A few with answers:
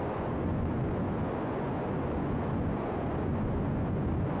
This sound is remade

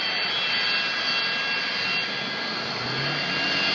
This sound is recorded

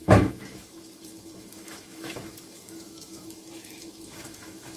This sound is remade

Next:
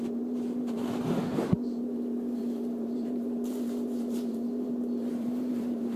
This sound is remade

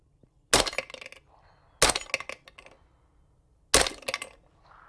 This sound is recorded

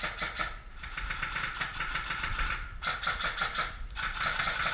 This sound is recorded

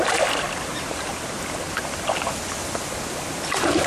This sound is recorded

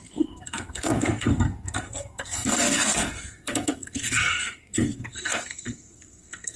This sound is remade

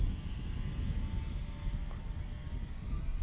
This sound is recorded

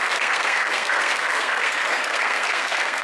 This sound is remade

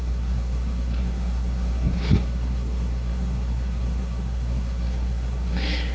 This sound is remade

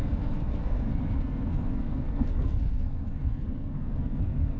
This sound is remade